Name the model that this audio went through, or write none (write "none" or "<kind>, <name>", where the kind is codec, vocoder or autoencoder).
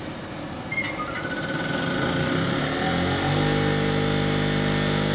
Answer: none